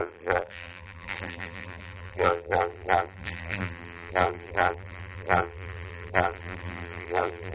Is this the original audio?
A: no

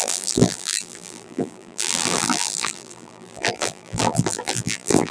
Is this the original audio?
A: no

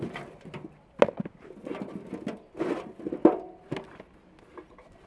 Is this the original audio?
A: yes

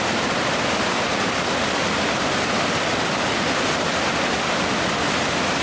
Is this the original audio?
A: yes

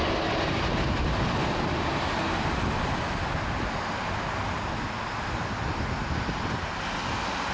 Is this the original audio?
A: yes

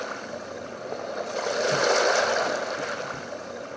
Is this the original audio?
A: yes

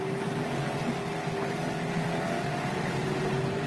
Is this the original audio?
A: yes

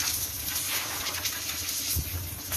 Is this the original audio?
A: yes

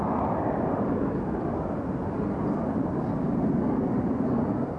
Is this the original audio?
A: no